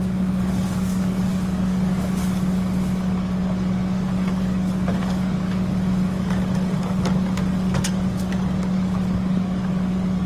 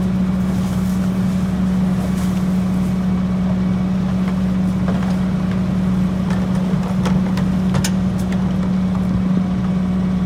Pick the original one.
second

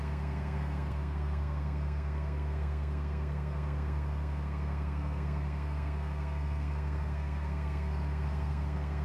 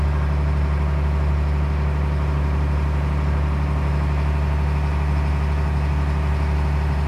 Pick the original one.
second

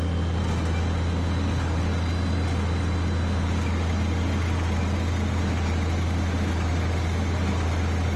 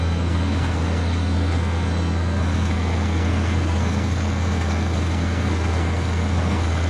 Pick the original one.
first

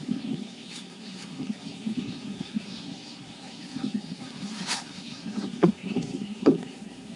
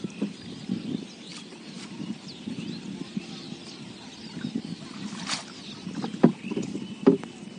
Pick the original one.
second